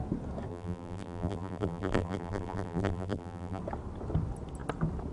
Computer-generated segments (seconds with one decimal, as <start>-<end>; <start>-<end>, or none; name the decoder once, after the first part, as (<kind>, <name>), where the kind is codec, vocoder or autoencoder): 0.5-3.6 (vocoder, BigVGAN v2)